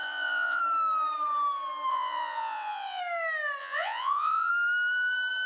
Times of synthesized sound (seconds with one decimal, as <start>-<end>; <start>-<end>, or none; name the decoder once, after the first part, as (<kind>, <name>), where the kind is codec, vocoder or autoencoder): 0.0-0.6 (vocoder, Vocos); 1.9-3.0; 3.6-4.5

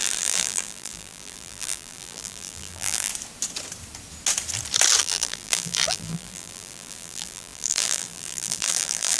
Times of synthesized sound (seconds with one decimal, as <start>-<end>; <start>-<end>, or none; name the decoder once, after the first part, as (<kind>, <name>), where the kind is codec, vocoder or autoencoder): 0.0-3.1 (vocoder, BigVGAN v2); 5.0-9.2

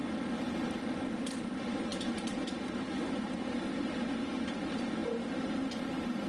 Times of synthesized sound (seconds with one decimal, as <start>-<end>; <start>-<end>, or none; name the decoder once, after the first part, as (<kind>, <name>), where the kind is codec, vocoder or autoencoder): 1.3-6.3 (vocoder, BigVGAN v2)

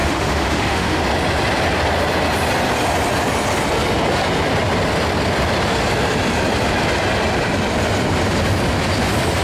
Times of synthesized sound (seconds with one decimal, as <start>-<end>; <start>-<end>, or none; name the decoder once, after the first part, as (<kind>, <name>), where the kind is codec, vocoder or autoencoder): 0.0-1.0 (autoencoder, DAC-VAE)